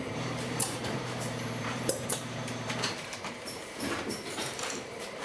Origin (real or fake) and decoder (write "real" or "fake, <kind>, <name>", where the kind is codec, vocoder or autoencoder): fake, vocoder, BigVGAN v2